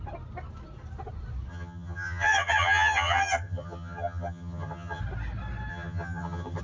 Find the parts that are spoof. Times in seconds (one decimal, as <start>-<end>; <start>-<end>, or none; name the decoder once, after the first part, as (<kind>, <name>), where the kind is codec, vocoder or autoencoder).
1.5-5.0 (vocoder, HiFi-GAN); 5.7-6.6